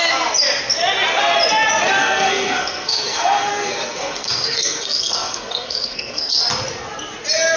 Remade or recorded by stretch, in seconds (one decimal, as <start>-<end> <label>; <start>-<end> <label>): 0.0-2.0 recorded; 2.0-6.4 remade; 6.4-7.6 recorded